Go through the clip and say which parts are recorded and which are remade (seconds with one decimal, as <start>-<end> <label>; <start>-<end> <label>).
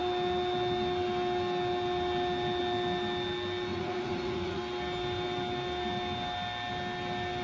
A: 0.0-3.7 recorded; 3.7-4.6 remade; 4.6-7.4 recorded